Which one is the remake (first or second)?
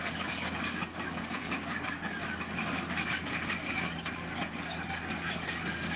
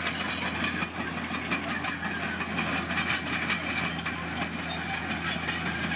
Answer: first